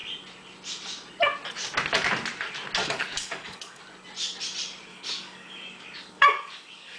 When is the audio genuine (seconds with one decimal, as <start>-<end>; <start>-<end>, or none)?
0.0-2.8; 3.8-4.9